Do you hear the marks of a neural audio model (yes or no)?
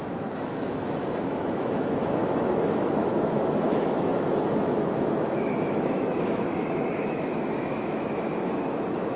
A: yes